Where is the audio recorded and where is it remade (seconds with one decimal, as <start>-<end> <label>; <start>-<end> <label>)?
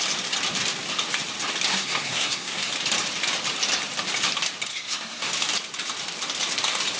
0.0-1.7 recorded; 1.7-2.7 remade; 2.7-4.7 recorded; 4.7-5.3 remade; 5.3-7.0 recorded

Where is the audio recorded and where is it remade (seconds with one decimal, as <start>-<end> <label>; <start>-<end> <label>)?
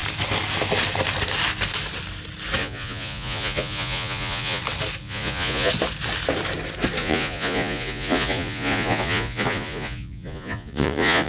0.0-2.6 recorded; 2.6-4.6 remade; 4.6-5.0 recorded; 5.0-5.7 remade; 5.7-7.0 recorded; 7.0-11.3 remade